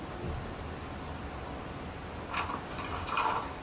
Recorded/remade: recorded